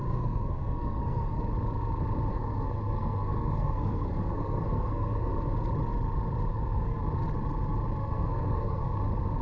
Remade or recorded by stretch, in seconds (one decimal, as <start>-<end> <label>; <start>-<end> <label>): 0.0-1.4 remade; 1.4-2.3 recorded; 2.3-5.3 remade; 5.3-6.5 recorded; 6.5-7.0 remade; 7.0-8.0 recorded; 8.0-9.0 remade; 9.0-9.4 recorded